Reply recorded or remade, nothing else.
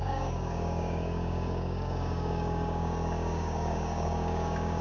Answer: remade